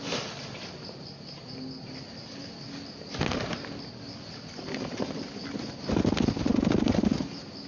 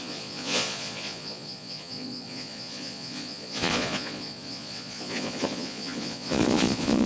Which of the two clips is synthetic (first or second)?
second